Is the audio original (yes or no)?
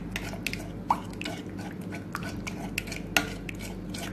yes